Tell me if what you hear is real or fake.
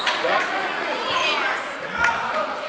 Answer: fake